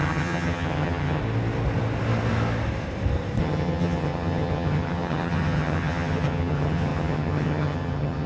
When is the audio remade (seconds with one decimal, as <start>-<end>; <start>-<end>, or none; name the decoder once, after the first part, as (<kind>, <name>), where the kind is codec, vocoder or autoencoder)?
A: 0.0-1.2 (vocoder, HiFi-GAN); 3.4-8.3